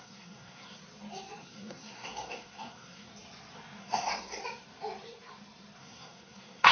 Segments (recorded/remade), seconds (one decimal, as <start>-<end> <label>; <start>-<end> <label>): 0.0-0.8 remade; 0.8-1.4 recorded; 1.4-3.1 remade; 3.1-3.8 recorded; 3.8-4.4 remade; 4.4-5.8 recorded; 5.8-6.7 remade